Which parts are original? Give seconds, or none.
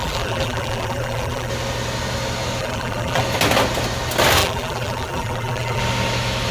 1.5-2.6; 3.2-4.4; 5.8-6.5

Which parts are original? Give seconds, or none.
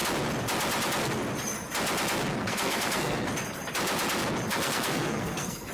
0.0-2.3; 3.3-4.5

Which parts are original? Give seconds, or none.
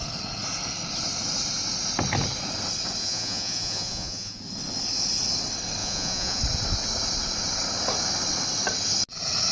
0.0-3.0; 4.4-5.8; 6.4-9.5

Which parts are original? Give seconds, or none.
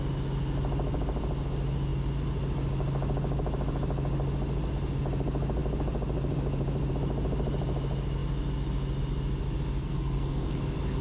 0.0-9.8; 10.6-11.0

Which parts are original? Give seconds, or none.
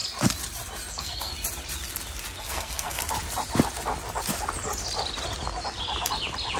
0.0-0.9; 1.3-2.4; 3.0-6.6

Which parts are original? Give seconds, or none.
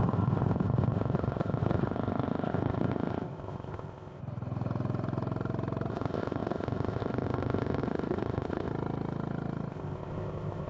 4.2-5.9; 8.7-9.7